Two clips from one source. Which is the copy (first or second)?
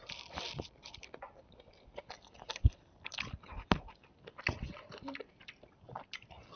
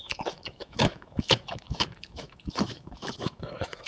second